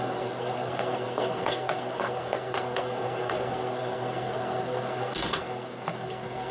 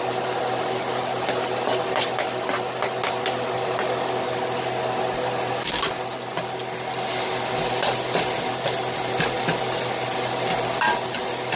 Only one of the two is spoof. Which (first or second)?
first